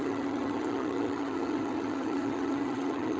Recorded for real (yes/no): no